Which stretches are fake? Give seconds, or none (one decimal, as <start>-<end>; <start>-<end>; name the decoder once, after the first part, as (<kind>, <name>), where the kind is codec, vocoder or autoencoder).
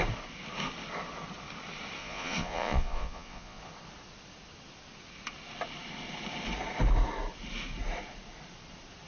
2.0-3.6 (vocoder, Vocos)